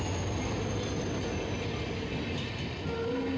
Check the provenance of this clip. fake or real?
real